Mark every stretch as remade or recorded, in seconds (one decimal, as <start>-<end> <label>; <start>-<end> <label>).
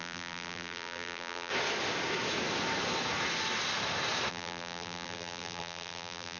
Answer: 0.0-1.5 remade; 1.5-4.3 recorded; 4.3-6.4 remade